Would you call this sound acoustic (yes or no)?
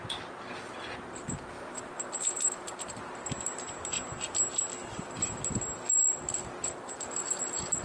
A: yes